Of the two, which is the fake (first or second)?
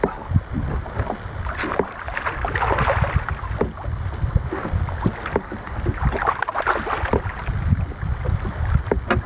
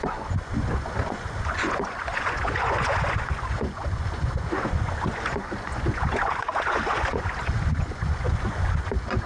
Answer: second